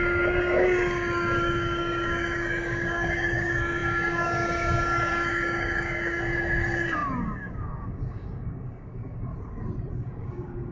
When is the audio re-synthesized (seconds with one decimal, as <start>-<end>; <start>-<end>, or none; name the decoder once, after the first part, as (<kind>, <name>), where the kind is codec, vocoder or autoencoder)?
0.0-9.3 (codec, DAC); 9.9-10.7